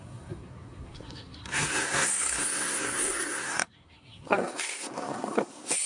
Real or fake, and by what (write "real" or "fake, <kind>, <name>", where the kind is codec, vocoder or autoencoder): fake, codec, SNAC